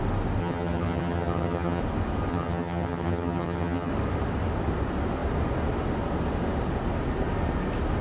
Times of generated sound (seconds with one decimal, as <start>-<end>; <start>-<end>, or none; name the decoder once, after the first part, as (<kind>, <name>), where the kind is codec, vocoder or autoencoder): 0.4-1.8 (vocoder, HiFi-GAN); 2.3-3.9